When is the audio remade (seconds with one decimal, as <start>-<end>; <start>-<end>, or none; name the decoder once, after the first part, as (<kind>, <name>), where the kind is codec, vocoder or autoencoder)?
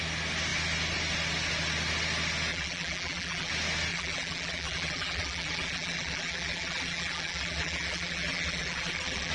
2.5-3.5 (vocoder, BigVGAN v2); 3.9-9.3